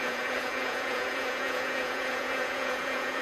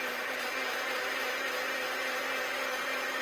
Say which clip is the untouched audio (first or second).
second